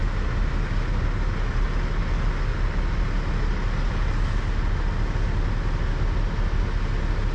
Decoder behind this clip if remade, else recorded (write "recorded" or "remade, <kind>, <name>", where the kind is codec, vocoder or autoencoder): recorded